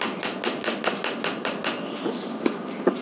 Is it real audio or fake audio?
real